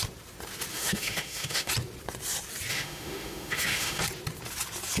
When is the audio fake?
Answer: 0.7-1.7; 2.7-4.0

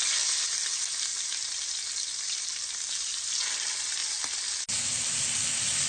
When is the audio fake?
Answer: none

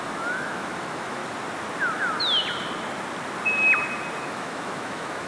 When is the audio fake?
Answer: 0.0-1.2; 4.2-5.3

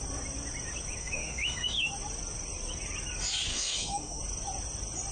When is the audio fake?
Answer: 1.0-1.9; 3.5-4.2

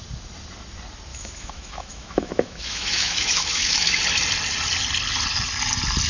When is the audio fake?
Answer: 1.1-4.0

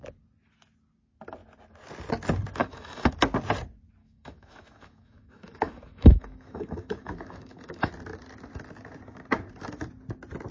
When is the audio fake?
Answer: 2.6-3.1; 4.0-7.9